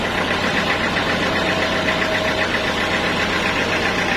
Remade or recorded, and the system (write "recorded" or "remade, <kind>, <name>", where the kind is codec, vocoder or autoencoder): recorded